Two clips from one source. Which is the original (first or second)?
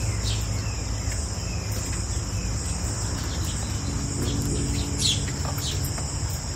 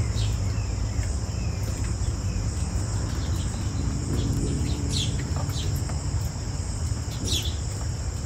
first